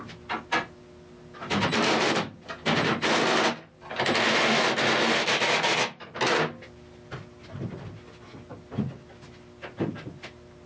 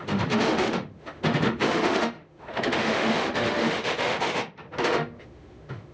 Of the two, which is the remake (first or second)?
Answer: second